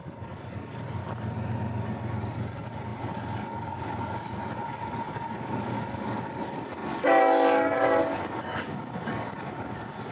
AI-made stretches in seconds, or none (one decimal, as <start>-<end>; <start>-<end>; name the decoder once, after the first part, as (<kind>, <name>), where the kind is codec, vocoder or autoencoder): 0.0-1.0 (codec, DAC); 2.2-10.1